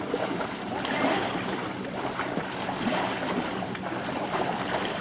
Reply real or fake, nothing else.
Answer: fake